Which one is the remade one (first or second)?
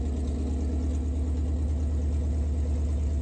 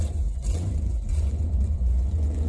second